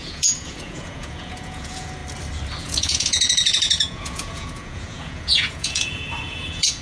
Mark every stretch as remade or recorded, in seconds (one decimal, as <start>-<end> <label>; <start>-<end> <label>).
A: 0.0-2.0 remade; 2.0-2.6 recorded; 2.6-6.8 remade